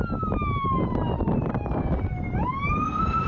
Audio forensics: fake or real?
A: fake